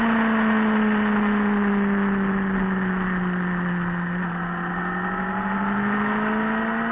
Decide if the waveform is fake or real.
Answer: real